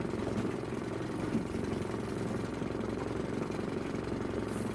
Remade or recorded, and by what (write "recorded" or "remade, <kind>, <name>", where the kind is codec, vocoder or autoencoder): recorded